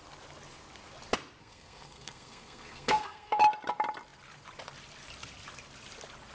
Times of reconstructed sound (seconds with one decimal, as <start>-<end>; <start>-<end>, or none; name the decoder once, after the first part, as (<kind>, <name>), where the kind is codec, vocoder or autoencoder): 1.4-3.4 (codec, SNAC)

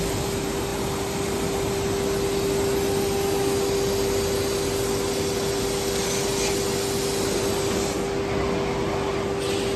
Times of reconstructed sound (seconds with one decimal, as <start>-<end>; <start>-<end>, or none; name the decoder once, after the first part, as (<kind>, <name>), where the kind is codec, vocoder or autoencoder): none

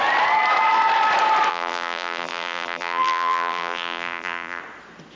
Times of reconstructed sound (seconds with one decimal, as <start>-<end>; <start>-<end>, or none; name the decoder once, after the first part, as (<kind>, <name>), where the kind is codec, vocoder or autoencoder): 1.5-4.6 (vocoder, BigVGAN v2)

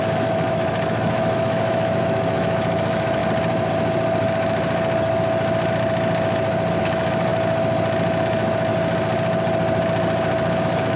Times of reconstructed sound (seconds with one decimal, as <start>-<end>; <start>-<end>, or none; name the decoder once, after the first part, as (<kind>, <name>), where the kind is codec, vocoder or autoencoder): 0.0-3.2 (autoencoder, DAC-VAE); 6.8-7.3; 8.2-8.7; 10.6-11.0

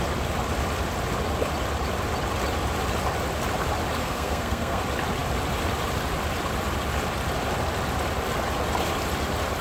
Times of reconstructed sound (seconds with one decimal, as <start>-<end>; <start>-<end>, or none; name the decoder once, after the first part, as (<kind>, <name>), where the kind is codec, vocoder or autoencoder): 4.0-4.8 (codec, SNAC)

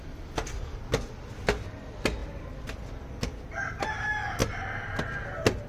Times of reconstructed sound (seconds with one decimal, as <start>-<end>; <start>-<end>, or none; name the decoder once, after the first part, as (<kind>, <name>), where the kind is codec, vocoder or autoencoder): none

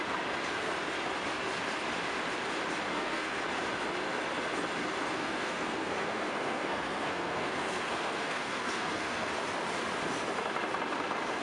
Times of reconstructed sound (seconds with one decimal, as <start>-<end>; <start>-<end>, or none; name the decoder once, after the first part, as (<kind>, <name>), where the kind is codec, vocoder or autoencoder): 2.9-3.4 (codec, SNAC); 5.1-9.3